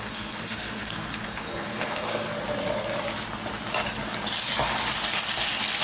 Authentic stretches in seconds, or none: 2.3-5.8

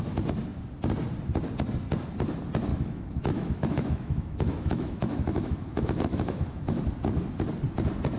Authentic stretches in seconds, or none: 0.0-2.7; 6.8-8.2

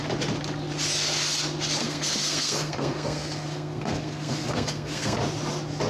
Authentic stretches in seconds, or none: 0.0-1.8; 5.2-5.9

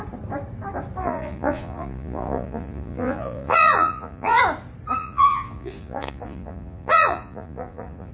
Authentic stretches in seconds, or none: 0.0-1.0; 4.4-5.0